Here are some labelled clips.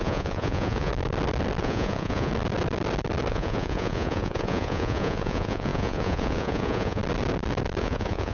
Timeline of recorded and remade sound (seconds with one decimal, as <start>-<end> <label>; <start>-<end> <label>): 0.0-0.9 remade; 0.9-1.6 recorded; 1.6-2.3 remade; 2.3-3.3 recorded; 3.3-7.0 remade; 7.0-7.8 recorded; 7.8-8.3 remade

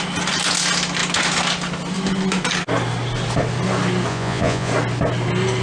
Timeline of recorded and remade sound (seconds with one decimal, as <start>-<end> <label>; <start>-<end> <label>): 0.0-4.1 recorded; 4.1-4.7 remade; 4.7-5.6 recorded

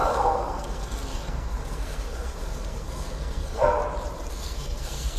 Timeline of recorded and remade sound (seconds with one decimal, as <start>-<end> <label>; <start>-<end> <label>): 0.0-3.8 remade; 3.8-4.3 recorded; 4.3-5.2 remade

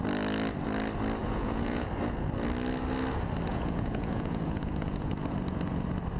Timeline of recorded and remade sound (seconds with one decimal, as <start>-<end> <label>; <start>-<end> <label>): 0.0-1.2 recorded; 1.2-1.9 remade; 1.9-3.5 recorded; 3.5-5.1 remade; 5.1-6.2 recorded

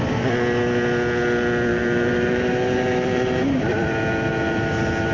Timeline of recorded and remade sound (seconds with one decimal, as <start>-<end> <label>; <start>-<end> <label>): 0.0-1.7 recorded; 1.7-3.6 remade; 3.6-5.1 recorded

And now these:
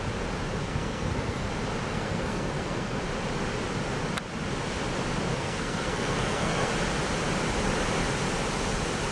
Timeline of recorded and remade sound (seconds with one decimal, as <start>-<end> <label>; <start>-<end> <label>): 0.0-0.6 recorded; 0.6-1.5 remade; 1.5-1.9 recorded; 1.9-3.0 remade; 3.0-5.3 recorded; 5.3-6.7 remade; 6.7-9.1 recorded